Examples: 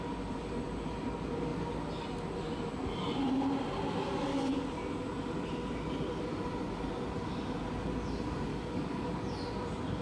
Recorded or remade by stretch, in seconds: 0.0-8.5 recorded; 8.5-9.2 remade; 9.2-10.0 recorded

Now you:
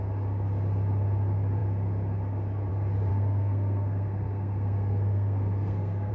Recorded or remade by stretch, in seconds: 0.0-3.1 recorded; 3.1-6.1 remade